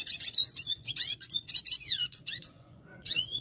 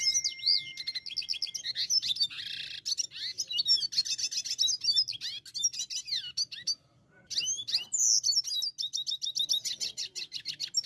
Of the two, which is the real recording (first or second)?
second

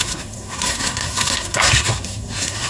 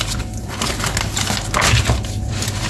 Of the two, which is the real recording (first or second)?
second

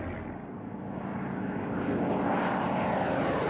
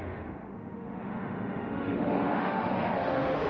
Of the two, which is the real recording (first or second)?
first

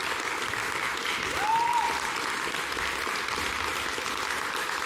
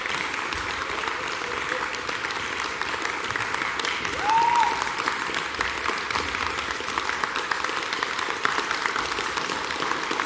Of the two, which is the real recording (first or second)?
first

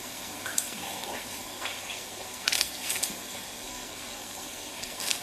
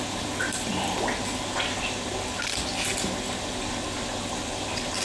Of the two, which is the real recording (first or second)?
second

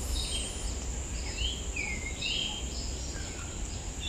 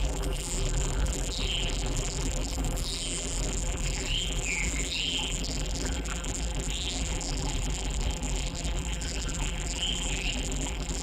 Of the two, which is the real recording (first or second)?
first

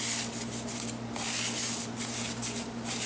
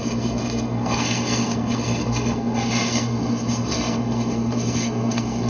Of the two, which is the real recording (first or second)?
first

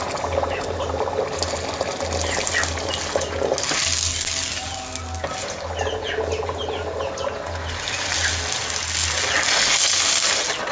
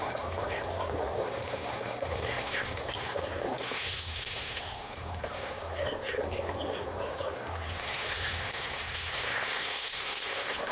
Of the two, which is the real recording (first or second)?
first